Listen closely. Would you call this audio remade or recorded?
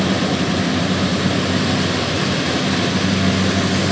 recorded